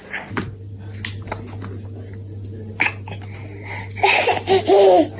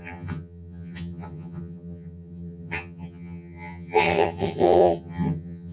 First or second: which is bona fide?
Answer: first